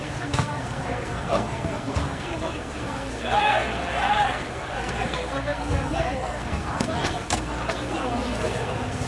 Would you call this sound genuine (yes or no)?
no